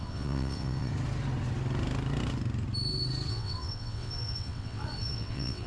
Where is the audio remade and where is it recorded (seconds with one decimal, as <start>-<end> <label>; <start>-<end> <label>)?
0.0-0.9 remade; 0.9-3.3 recorded; 3.3-5.7 remade